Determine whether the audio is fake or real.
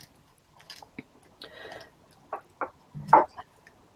real